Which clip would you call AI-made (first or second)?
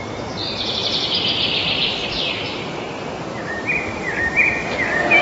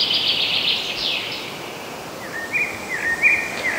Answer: first